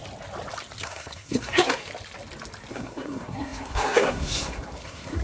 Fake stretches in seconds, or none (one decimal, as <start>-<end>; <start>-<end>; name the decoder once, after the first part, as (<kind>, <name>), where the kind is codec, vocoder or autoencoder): 0.8-1.9 (codec, SNAC); 2.7-5.2